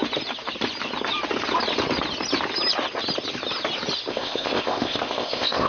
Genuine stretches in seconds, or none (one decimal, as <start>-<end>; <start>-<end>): 0.0-4.1